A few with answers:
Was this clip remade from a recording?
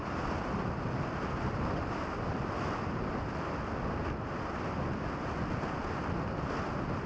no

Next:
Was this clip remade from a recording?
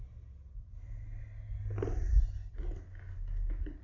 no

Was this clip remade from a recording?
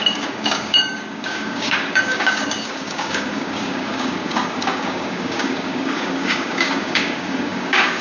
yes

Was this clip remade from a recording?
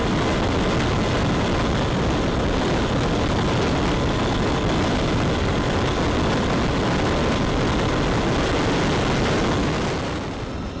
no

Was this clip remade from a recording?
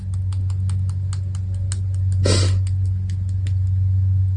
no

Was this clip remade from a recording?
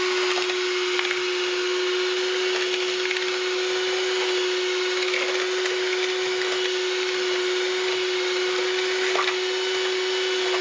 no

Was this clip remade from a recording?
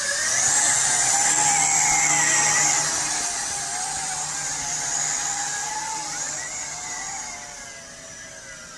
no